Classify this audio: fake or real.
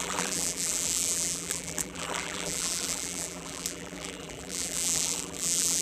fake